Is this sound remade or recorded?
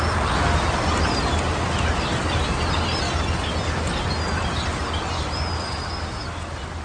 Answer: recorded